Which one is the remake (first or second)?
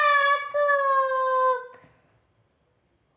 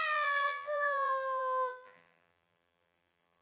second